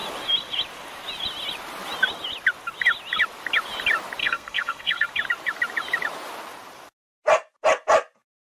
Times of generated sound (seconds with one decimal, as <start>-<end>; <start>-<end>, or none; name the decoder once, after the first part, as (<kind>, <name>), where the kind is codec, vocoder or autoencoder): 4.2-5.1 (codec, SNAC)